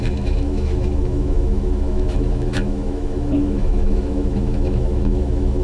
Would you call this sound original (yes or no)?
no